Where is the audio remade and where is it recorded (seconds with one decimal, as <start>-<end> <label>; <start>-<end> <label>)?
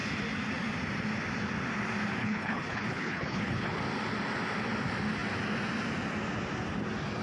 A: 0.0-2.2 recorded; 2.2-3.8 remade; 3.8-7.2 recorded